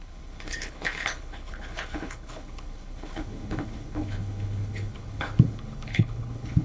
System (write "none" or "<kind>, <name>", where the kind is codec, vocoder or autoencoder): codec, HILCodec